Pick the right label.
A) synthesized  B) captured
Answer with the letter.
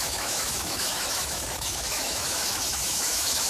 A